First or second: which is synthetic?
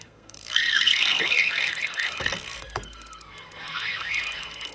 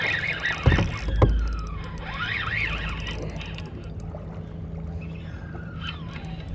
first